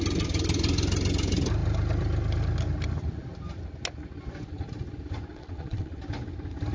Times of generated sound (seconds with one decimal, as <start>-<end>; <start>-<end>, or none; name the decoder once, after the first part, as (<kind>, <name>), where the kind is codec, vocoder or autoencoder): 5.3-6.0 (vocoder, WaveNeXt)